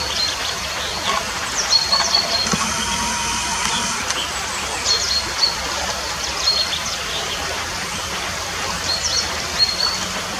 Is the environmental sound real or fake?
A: fake